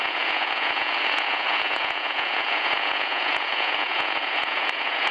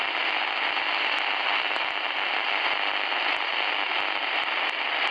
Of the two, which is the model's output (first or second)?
first